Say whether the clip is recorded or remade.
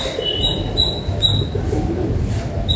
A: recorded